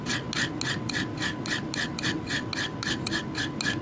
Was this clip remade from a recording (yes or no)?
no